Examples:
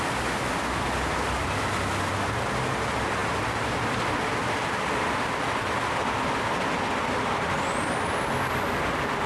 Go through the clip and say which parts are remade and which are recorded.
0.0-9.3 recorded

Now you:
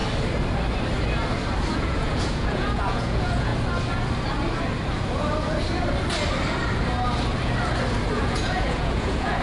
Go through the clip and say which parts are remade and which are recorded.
0.0-1.7 recorded; 1.7-3.5 remade; 3.5-8.2 recorded; 8.2-9.4 remade

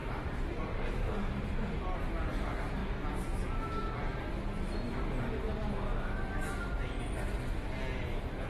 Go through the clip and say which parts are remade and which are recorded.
0.0-1.5 remade; 1.5-8.5 recorded